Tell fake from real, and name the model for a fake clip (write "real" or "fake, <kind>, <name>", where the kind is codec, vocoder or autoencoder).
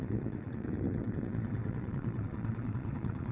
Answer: fake, vocoder, Vocos